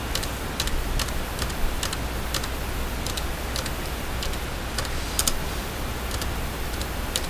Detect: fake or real real